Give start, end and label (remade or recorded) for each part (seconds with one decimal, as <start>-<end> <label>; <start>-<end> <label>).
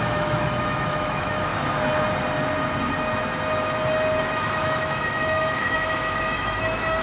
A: 0.0-1.5 remade; 1.5-4.2 recorded; 4.2-7.0 remade